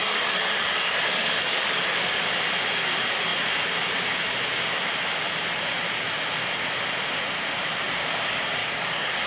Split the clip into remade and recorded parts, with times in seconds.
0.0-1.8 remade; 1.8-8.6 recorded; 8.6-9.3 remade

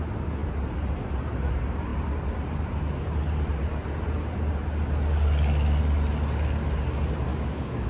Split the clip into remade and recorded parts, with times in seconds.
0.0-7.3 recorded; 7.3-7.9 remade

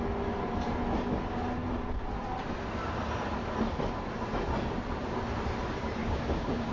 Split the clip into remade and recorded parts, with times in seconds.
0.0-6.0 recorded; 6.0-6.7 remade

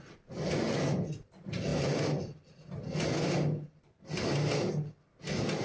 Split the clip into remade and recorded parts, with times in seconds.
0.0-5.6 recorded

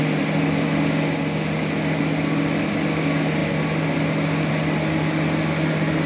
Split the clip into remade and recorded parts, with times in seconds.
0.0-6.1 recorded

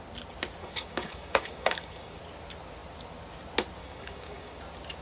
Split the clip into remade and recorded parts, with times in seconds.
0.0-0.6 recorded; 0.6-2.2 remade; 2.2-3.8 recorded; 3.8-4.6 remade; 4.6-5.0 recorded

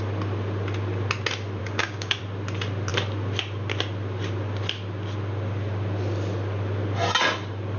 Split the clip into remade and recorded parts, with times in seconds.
0.0-1.6 recorded; 1.6-2.2 remade; 2.2-7.8 recorded

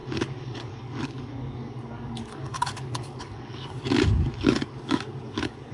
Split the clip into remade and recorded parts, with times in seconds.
0.0-5.7 remade